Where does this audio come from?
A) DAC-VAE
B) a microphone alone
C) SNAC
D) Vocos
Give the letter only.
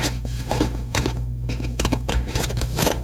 A